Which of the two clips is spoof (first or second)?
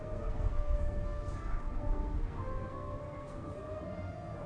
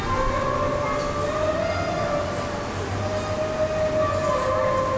first